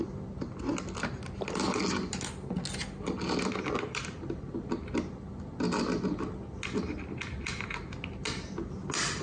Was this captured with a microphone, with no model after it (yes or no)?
yes